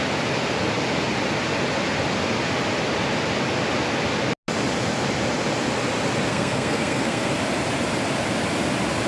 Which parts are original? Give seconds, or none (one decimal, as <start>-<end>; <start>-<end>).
0.0-6.3; 7.3-9.1